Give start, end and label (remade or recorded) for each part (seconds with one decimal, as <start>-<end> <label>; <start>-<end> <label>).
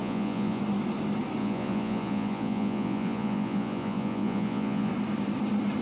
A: 0.0-0.6 remade; 0.6-1.4 recorded; 1.4-4.9 remade; 4.9-5.8 recorded